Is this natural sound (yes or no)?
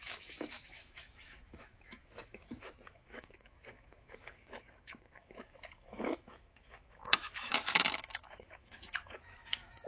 no